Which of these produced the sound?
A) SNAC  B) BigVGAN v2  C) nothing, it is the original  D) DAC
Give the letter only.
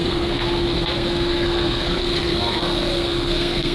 A